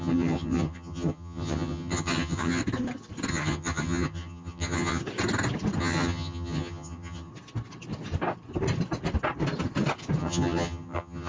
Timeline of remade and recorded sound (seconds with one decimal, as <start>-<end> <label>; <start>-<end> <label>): 0.0-2.6 remade; 2.6-3.3 recorded; 3.3-5.0 remade; 5.0-5.8 recorded; 5.8-7.3 remade; 7.3-10.2 recorded; 10.2-11.3 remade